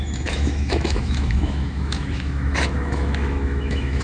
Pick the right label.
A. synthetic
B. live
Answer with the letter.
A